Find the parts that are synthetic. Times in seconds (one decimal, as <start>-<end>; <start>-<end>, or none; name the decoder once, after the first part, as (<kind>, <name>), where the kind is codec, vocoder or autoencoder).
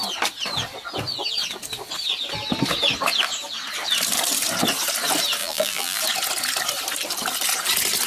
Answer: 5.4-6.0 (vocoder, BigVGAN v2)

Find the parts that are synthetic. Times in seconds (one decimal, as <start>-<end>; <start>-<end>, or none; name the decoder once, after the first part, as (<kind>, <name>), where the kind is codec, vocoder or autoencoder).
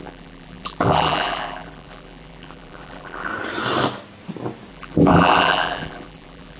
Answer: 0.0-3.3 (vocoder, BigVGAN v2); 4.7-6.6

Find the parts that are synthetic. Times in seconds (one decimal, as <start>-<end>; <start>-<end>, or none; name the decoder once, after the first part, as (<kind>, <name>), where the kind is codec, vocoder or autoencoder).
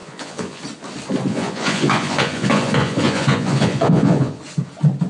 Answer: 0.0-0.6 (vocoder, Vocos); 1.3-4.4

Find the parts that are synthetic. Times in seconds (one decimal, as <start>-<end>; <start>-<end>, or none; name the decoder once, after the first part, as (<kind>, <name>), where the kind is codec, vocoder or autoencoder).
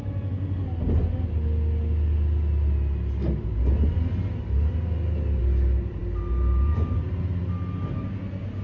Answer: none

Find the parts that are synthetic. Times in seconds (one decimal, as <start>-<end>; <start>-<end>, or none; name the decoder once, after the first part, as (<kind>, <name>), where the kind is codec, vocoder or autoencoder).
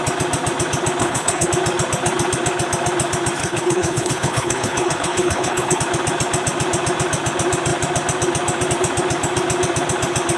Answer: 1.0-1.5 (codec, HILCodec); 3.4-5.8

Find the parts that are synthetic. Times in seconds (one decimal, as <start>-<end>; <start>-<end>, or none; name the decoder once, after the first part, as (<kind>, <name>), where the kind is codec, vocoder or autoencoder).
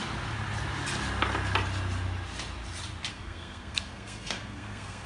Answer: 3.1-5.1 (codec, SNAC)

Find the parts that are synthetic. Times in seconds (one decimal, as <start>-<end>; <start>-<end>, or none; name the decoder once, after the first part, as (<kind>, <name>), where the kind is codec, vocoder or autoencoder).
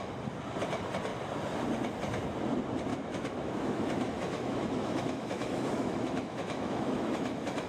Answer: 2.9-7.7 (autoencoder, DAC-VAE)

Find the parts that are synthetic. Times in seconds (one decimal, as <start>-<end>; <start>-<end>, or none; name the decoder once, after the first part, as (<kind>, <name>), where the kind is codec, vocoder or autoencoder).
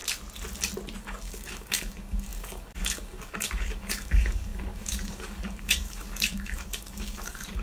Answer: 1.0-7.6 (codec, DAC)